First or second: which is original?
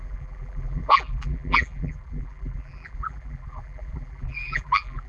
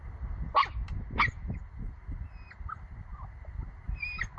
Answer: second